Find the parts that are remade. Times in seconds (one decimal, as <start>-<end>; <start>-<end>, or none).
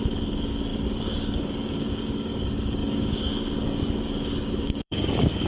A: 0.0-5.5